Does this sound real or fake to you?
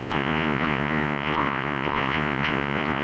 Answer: fake